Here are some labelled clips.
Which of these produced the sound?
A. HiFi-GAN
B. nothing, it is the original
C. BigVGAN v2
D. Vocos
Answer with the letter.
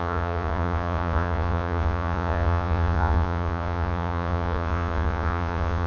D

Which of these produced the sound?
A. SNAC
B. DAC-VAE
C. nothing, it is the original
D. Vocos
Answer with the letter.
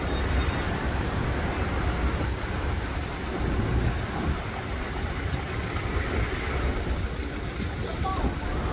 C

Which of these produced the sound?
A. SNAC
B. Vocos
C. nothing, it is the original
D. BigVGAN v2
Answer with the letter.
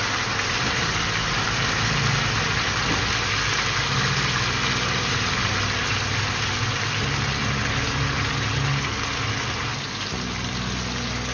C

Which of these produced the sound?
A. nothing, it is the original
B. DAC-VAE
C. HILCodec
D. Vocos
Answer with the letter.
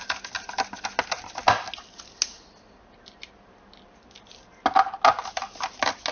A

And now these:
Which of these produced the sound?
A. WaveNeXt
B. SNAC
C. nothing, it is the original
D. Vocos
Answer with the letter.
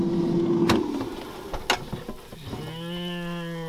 C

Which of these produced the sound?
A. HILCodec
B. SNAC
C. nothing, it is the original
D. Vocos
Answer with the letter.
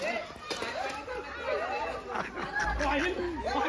C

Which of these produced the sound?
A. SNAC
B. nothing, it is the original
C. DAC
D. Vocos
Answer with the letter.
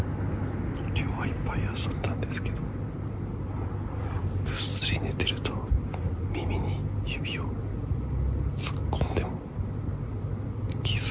B